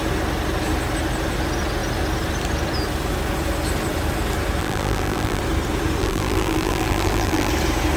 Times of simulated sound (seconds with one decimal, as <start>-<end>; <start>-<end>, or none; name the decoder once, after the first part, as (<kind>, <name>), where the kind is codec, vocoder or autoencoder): 4.6-5.4 (vocoder, BigVGAN v2); 6.0-7.5